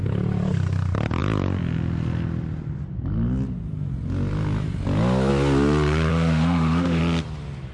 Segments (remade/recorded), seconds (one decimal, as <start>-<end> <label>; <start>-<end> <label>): 0.0-6.1 recorded; 6.1-7.0 remade; 7.0-7.7 recorded